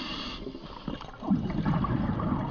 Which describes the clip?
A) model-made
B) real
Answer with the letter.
B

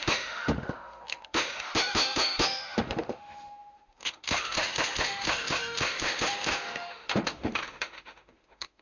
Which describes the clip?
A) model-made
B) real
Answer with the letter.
A